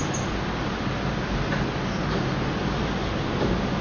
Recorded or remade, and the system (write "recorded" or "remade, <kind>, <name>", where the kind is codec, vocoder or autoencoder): recorded